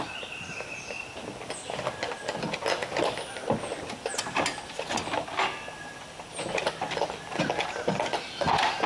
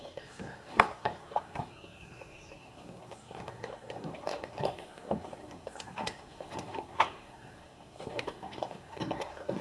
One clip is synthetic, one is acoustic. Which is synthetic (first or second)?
second